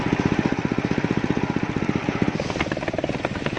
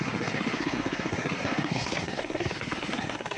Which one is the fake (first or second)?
second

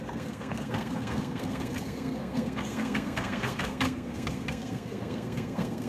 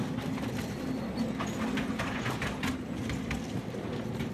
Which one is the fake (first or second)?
first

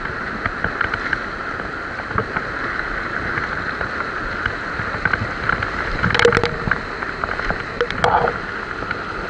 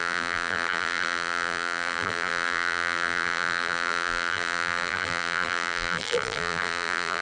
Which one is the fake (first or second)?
second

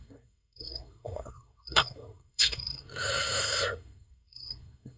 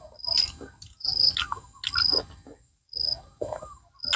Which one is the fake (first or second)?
first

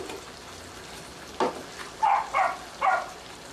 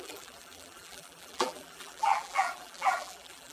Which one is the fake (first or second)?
second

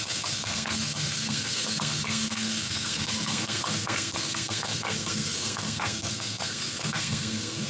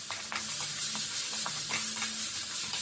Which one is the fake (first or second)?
first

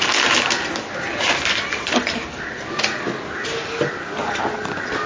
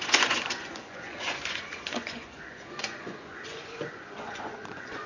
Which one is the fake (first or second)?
second